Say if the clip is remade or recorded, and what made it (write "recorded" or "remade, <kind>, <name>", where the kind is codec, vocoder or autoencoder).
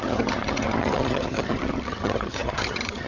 remade, vocoder, HiFi-GAN